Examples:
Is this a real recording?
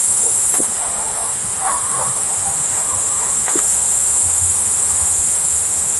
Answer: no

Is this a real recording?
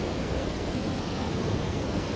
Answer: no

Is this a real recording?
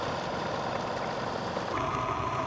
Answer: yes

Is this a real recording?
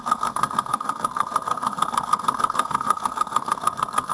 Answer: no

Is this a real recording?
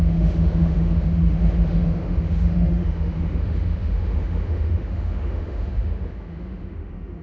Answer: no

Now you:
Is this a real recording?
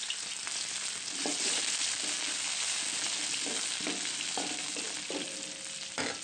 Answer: yes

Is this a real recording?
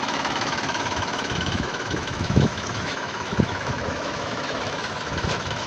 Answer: no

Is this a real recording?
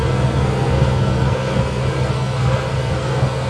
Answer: no